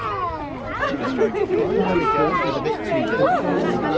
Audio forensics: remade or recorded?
recorded